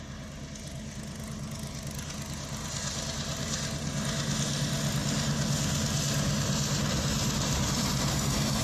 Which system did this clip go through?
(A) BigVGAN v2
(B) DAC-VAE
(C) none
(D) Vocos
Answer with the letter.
C